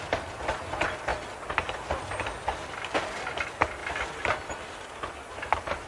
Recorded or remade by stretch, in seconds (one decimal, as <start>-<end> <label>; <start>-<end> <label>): 0.0-5.9 recorded

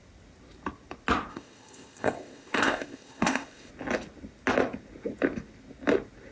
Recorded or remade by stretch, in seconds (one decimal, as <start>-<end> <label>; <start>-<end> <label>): 0.0-1.3 recorded; 1.3-3.7 remade; 3.7-6.3 recorded

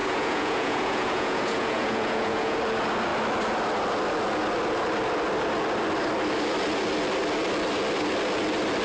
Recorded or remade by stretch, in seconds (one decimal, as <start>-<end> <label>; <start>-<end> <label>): 0.0-2.6 remade; 2.6-8.8 recorded

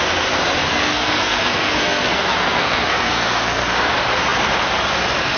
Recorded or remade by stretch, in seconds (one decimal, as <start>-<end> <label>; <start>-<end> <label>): 0.0-0.7 recorded; 0.7-3.9 remade; 3.9-5.4 recorded

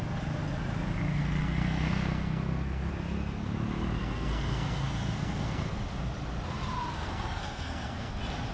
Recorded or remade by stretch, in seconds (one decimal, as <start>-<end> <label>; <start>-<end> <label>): 0.0-1.1 recorded; 1.1-2.9 remade; 2.9-4.0 recorded; 4.0-5.8 remade; 5.8-7.0 recorded; 7.0-8.1 remade; 8.1-8.5 recorded